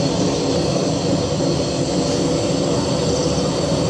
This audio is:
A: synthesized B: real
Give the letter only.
B